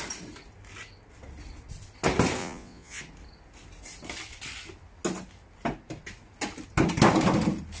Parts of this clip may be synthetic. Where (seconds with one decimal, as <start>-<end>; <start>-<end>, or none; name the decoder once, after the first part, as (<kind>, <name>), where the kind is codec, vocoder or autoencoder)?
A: 2.4-3.0 (vocoder, Vocos)